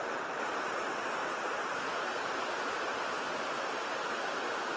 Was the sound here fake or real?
real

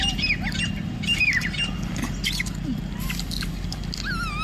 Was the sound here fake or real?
real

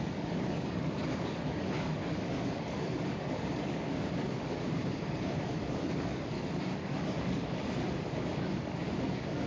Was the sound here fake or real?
fake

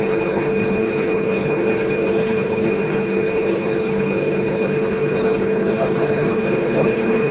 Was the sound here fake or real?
fake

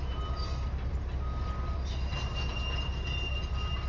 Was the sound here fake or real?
real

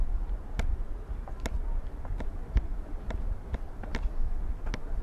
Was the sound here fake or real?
real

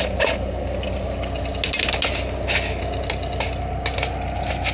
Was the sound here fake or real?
real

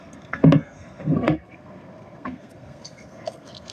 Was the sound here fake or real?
fake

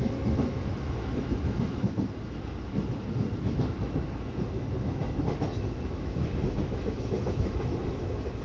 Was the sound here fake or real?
fake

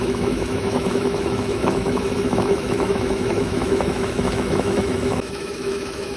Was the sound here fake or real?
fake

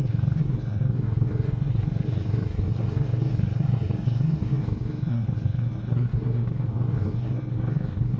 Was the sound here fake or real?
fake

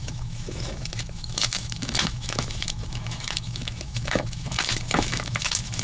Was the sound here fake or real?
fake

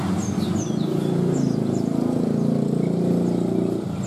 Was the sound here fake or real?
real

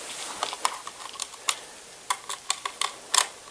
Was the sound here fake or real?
real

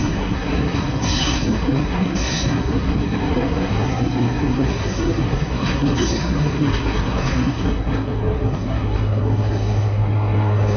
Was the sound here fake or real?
fake